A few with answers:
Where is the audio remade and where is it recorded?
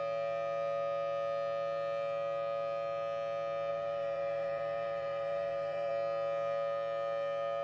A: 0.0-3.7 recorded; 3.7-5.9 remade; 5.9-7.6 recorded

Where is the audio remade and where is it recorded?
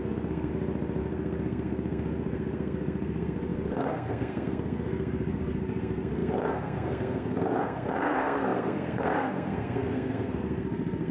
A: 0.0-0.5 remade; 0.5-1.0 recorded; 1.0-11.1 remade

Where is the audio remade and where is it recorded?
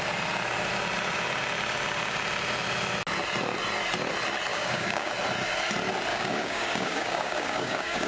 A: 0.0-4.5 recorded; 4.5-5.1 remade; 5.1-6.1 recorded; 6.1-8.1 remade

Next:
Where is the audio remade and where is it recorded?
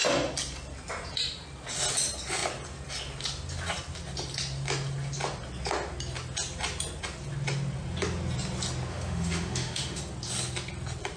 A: 0.0-8.9 recorded; 8.9-10.0 remade; 10.0-11.2 recorded